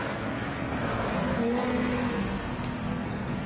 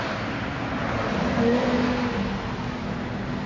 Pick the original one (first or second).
second